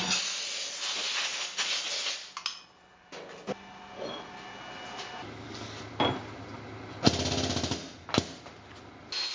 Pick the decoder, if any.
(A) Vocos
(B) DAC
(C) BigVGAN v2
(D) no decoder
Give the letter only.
D